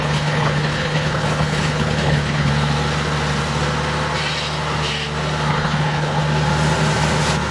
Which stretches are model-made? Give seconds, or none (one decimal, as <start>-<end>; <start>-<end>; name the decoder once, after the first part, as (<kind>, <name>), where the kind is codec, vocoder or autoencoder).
0.0-2.5 (codec, HILCodec); 5.5-6.2